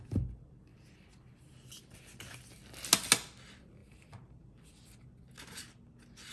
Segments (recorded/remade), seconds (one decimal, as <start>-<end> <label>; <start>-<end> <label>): 0.0-3.8 recorded; 3.8-4.5 remade; 4.5-6.3 recorded